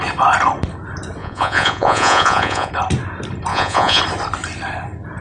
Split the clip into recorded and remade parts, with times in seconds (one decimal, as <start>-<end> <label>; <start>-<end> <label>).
0.0-1.2 recorded; 1.2-2.7 remade; 2.7-3.5 recorded; 3.5-4.0 remade; 4.0-5.2 recorded